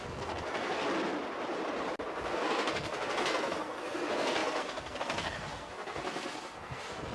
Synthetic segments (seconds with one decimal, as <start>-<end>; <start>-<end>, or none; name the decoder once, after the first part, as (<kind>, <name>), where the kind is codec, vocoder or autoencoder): 0.0-0.8 (codec, SNAC); 2.3-7.1